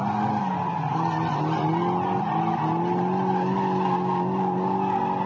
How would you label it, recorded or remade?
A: recorded